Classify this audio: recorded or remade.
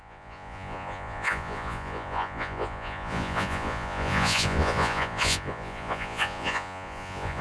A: remade